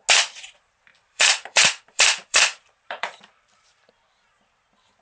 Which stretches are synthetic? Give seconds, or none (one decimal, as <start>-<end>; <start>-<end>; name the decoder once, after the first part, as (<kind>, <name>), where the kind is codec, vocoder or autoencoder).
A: 0.9-3.9 (vocoder, BigVGAN v2)